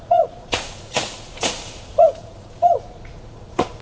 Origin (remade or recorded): remade